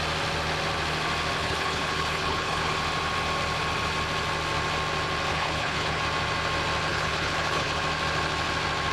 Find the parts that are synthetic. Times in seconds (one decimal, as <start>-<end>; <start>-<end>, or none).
1.4-2.7; 5.3-6.0; 6.9-7.8